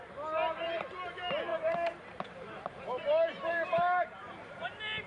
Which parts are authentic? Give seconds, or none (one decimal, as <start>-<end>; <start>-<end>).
0.0-1.5; 4.6-5.1